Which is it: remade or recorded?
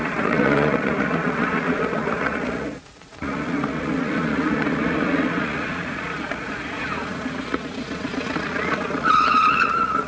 remade